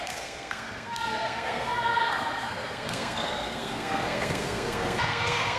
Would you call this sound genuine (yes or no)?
no